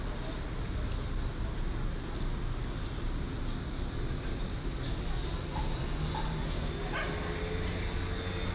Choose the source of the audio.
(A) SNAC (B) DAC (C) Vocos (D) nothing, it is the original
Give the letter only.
D